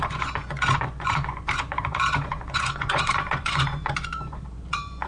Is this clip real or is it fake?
fake